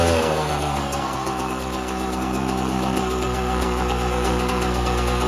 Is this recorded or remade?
remade